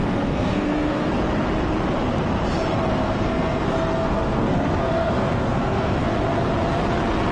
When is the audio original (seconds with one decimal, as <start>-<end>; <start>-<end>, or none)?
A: 1.1-2.9; 6.1-7.3